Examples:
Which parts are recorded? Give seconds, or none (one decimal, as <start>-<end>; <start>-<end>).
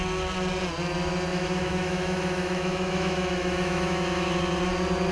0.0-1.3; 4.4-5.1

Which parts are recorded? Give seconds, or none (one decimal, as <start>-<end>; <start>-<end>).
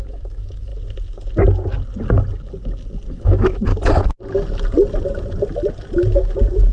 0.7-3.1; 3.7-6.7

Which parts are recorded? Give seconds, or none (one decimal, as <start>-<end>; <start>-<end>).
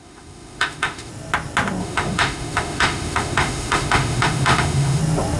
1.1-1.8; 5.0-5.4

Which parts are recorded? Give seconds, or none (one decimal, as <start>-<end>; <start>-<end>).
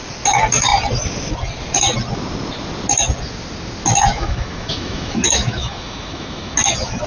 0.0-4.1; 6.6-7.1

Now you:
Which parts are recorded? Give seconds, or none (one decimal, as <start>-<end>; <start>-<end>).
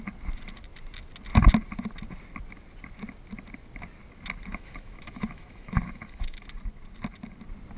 0.0-4.5; 6.4-7.8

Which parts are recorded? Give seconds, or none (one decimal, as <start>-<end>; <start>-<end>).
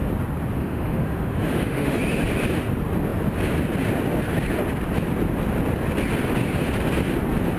0.0-0.6; 2.0-7.6